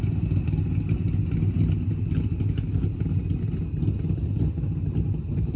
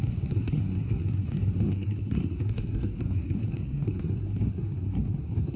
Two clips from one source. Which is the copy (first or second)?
second